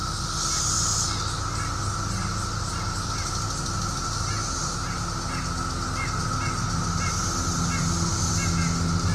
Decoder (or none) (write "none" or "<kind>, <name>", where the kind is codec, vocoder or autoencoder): none